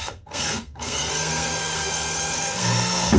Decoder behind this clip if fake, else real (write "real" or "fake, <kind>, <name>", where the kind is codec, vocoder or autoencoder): fake, codec, SNAC